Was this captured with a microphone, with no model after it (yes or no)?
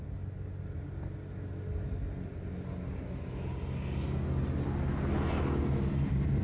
yes